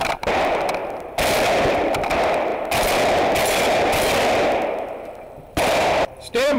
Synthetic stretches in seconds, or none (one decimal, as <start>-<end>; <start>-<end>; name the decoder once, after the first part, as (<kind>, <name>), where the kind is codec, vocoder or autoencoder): 0.0-0.8 (vocoder, BigVGAN v2); 1.7-2.5; 5.5-6.6